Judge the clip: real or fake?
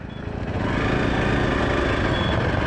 real